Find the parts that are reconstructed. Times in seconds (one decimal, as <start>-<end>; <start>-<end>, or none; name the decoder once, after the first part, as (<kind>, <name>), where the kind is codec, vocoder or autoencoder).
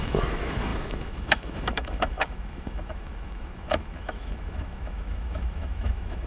0.0-6.3 (autoencoder, DAC-VAE)